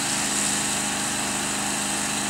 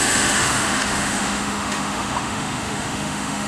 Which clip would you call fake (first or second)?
second